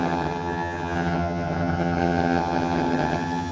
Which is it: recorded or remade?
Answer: remade